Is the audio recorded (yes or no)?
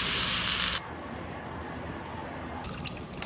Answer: yes